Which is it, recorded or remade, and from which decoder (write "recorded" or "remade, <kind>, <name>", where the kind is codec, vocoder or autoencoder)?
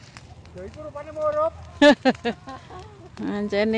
recorded